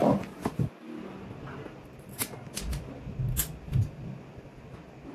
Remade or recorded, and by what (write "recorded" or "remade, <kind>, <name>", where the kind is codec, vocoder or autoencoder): recorded